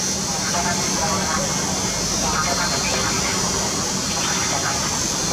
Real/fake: real